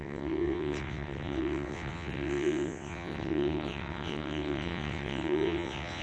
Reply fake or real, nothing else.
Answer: fake